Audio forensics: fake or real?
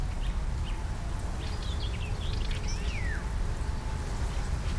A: real